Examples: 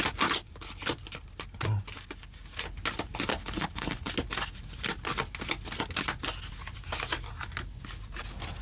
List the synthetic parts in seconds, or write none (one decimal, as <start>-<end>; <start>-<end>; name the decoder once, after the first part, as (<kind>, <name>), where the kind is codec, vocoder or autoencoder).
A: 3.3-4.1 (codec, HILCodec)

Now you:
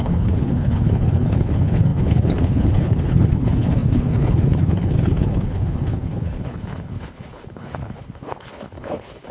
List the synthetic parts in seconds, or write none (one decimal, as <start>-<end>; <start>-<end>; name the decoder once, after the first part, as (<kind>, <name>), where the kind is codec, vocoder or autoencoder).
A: 0.0-9.3 (codec, HILCodec)

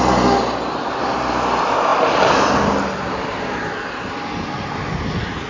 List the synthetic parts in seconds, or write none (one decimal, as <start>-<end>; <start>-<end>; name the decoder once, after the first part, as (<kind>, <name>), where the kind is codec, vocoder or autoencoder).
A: none

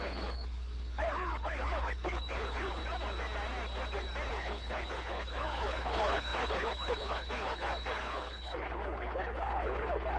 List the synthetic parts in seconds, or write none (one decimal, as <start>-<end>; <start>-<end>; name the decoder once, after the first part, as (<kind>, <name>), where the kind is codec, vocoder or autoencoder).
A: 0.0-2.8 (codec, HILCodec); 4.3-10.2

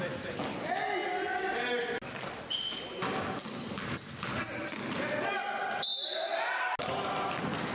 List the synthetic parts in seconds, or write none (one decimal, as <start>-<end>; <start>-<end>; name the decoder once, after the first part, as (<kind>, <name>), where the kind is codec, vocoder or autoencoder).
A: none

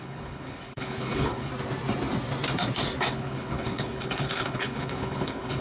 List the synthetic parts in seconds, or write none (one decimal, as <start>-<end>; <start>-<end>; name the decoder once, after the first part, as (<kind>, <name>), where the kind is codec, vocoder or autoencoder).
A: 0.0-1.5 (codec, HILCodec); 3.1-5.6

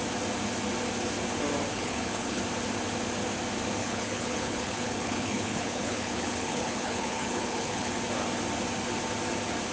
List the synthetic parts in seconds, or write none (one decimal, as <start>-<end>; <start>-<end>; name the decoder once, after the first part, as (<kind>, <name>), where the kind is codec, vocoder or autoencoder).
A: 1.7-2.4 (codec, HILCodec); 3.8-7.9

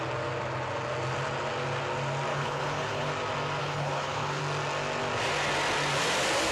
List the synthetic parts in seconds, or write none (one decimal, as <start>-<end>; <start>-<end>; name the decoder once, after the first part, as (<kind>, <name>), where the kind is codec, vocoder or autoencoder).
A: 2.3-3.1 (codec, HILCodec); 3.6-4.4